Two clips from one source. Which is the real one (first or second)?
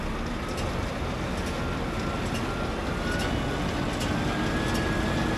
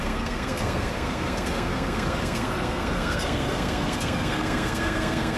first